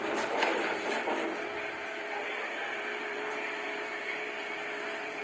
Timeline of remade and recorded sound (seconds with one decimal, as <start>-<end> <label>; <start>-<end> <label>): 0.0-5.2 remade